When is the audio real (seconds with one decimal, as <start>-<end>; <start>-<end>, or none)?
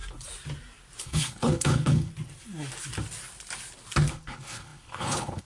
0.0-1.0; 2.1-4.1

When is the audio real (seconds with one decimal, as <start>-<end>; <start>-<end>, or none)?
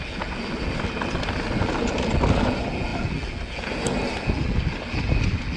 0.0-5.6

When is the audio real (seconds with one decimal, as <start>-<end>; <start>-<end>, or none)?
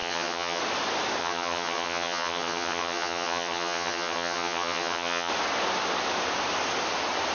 0.6-1.2; 5.3-7.3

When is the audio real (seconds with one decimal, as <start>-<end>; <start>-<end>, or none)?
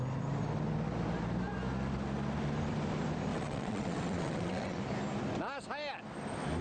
0.0-3.3; 4.8-6.6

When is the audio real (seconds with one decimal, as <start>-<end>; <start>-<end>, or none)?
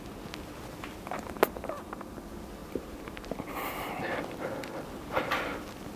0.0-2.6; 3.6-6.0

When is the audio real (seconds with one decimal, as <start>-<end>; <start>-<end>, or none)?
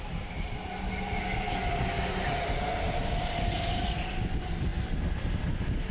0.0-5.9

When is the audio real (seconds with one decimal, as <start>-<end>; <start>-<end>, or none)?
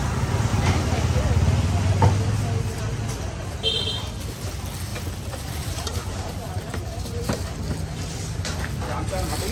0.0-4.9; 7.2-9.5